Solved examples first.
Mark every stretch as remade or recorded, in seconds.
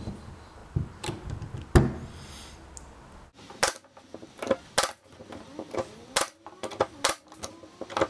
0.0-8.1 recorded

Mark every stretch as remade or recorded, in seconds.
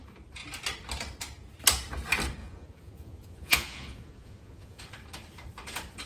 0.0-2.4 recorded; 2.4-4.8 remade; 4.8-6.1 recorded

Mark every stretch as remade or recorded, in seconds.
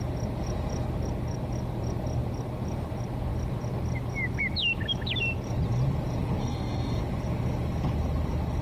0.0-6.4 recorded; 6.4-7.0 remade; 7.0-8.6 recorded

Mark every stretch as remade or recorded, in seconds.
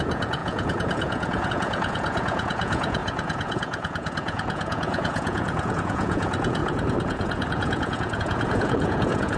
0.0-9.4 remade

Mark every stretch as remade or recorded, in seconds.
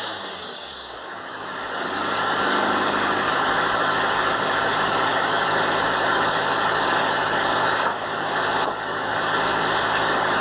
0.0-10.4 remade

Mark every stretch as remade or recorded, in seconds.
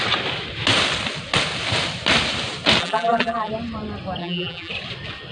0.0-2.8 recorded; 2.8-3.5 remade; 3.5-4.2 recorded; 4.2-4.7 remade; 4.7-5.3 recorded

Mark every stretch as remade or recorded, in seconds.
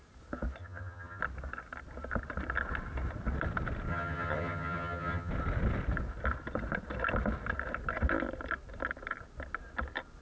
0.0-0.6 recorded; 0.6-1.2 remade; 1.2-3.9 recorded; 3.9-5.3 remade; 5.3-10.2 recorded